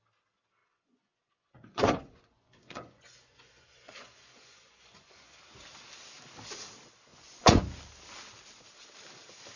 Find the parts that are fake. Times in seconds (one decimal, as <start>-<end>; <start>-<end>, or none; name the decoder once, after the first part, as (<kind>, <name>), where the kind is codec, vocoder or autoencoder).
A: 0.6-5.4 (vocoder, Vocos); 7.1-7.6